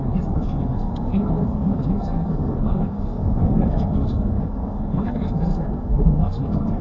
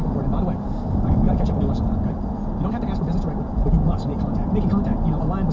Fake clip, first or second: first